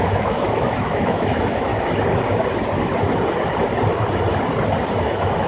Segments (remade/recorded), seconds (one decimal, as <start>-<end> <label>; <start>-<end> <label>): 0.0-1.7 remade; 1.7-5.0 recorded; 5.0-5.5 remade